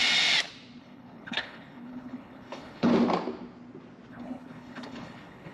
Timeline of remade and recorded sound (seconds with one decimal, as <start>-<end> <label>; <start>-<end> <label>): 0.0-0.8 recorded; 0.8-2.9 remade; 2.9-4.1 recorded; 4.1-5.5 remade